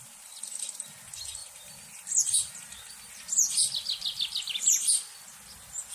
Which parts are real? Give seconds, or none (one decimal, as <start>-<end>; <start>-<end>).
0.8-1.4; 2.5-5.9